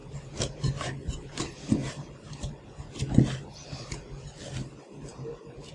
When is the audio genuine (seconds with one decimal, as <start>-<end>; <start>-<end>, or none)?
1.4-1.8; 2.8-5.1